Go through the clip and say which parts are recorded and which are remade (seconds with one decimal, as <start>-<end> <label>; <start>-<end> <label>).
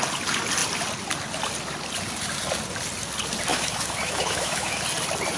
0.0-3.5 recorded; 3.5-4.8 remade; 4.8-5.4 recorded